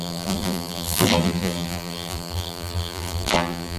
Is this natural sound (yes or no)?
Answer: no